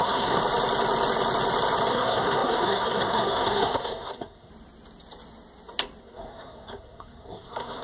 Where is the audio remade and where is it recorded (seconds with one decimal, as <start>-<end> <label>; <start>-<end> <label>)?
0.0-0.4 remade; 0.4-1.9 recorded; 1.9-4.5 remade; 4.5-6.0 recorded; 6.0-7.8 remade